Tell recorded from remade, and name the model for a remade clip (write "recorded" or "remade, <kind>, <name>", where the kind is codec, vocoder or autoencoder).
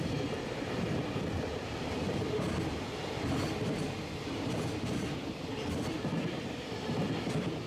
recorded